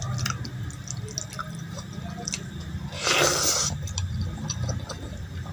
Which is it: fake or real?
real